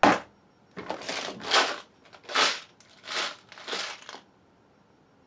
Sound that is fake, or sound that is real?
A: real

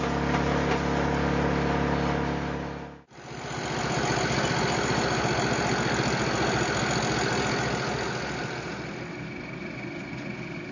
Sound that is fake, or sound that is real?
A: real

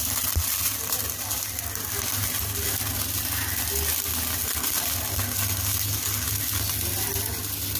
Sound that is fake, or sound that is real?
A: real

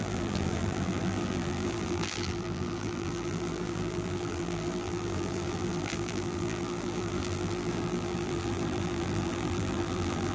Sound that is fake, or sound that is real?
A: fake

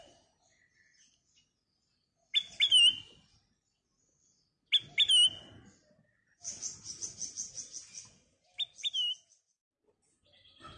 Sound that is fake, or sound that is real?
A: real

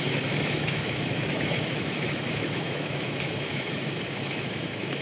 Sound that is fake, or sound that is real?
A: fake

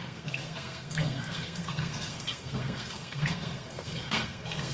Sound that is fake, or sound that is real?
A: fake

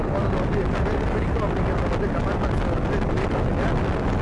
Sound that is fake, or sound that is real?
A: real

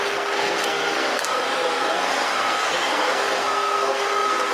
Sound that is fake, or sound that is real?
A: fake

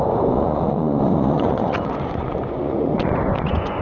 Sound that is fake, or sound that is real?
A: fake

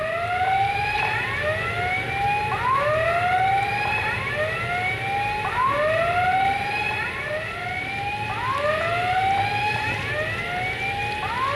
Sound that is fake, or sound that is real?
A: real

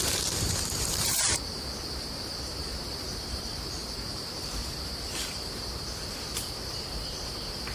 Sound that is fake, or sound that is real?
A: fake